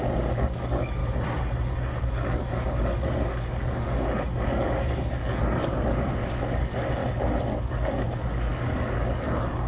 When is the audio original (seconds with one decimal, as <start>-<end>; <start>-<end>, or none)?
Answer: 1.0-2.0; 7.0-7.6